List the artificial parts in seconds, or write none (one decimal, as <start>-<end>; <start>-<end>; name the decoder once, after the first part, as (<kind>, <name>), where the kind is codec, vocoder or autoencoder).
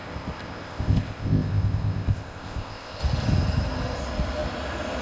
0.0-3.0 (codec, ZipCodec)